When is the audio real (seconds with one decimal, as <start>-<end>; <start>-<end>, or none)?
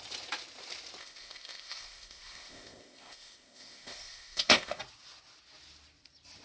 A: 0.0-1.0; 4.8-6.4